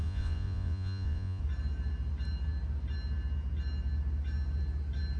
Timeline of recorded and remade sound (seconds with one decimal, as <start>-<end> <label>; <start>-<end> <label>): 0.0-1.4 remade; 1.4-5.2 recorded